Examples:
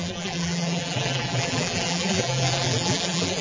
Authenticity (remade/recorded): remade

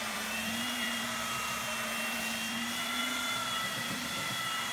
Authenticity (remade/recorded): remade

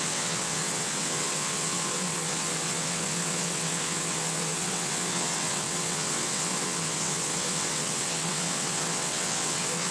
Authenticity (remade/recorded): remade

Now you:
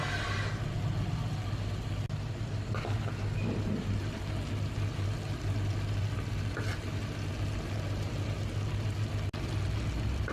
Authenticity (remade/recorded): recorded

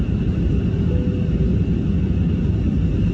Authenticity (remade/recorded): recorded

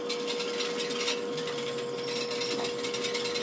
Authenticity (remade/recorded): recorded